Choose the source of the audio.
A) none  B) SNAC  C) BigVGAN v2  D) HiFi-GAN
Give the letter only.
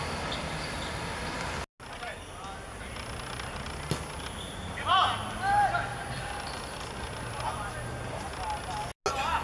A